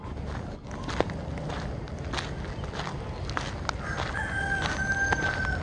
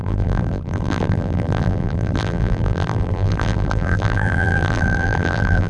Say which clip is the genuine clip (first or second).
first